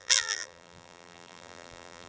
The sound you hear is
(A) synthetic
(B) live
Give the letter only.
A